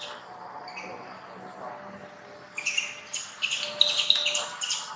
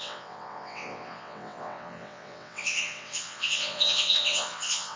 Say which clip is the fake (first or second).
second